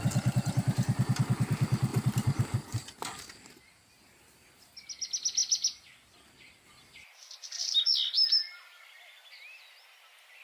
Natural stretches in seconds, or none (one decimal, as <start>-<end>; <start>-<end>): 0.0-10.4